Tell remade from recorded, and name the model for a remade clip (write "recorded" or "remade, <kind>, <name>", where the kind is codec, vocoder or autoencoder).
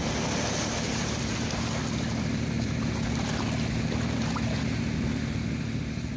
recorded